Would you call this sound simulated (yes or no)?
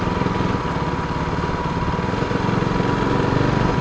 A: no